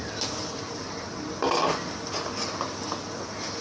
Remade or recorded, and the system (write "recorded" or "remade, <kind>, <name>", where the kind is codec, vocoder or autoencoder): recorded